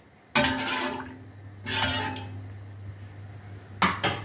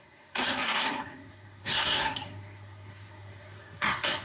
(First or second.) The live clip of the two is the first